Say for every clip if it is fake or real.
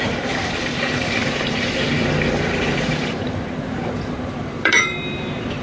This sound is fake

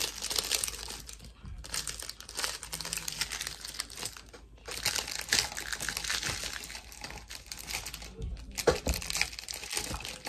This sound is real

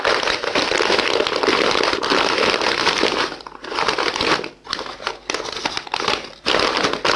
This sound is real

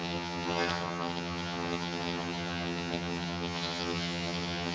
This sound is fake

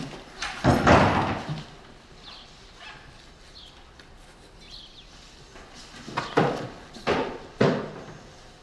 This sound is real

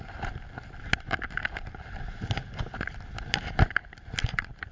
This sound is real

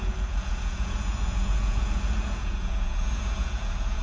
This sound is fake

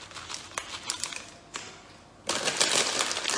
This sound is real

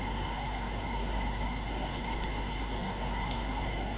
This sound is fake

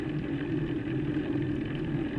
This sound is real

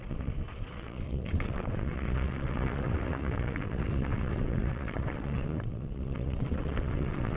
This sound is fake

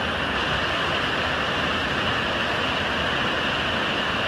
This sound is real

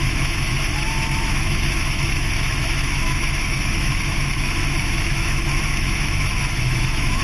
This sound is fake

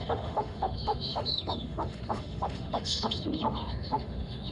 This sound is fake